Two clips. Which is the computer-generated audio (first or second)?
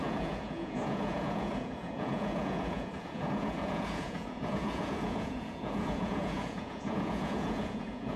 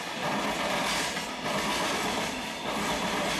first